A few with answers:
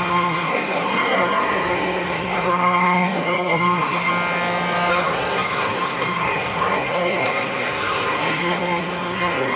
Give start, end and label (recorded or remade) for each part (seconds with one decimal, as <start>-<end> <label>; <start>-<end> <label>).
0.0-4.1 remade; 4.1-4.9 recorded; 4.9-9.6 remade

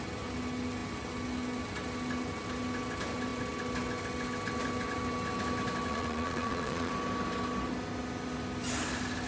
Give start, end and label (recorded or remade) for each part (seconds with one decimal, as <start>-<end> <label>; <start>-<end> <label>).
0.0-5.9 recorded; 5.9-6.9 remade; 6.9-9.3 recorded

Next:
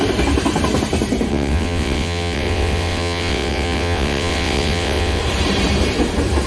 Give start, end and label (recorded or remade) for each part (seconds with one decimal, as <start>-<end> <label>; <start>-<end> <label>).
0.0-1.3 recorded; 1.3-5.2 remade; 5.2-6.5 recorded

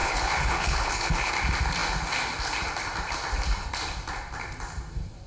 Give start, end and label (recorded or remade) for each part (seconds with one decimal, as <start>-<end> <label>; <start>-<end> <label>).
0.0-1.3 remade; 1.3-5.3 recorded

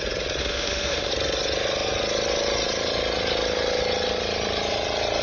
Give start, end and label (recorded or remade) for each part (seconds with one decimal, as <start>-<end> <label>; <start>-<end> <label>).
0.0-0.4 recorded; 0.4-1.1 remade; 1.1-5.2 recorded

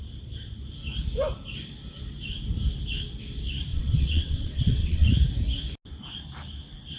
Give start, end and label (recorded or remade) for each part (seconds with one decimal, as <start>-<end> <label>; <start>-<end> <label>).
0.0-3.7 recorded; 3.7-5.1 remade; 5.1-7.0 recorded

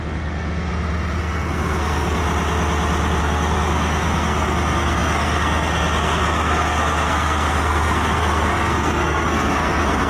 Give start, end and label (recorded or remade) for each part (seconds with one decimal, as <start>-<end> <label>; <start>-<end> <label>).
0.0-0.7 remade; 0.7-1.2 recorded; 1.2-2.2 remade; 2.2-3.2 recorded; 3.2-10.1 remade

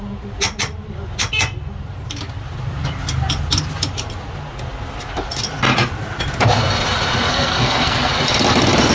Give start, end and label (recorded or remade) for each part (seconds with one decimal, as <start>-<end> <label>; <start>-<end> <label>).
0.0-7.3 recorded; 7.3-8.1 remade; 8.1-8.9 recorded